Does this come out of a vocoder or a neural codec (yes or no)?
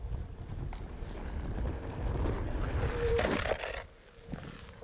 no